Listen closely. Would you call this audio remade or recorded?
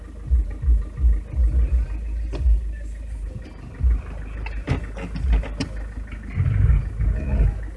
recorded